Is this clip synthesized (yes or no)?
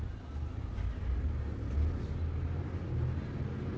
no